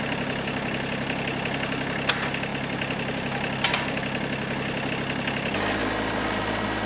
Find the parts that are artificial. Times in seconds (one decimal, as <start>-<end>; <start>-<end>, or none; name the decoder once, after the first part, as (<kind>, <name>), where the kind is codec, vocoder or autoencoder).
none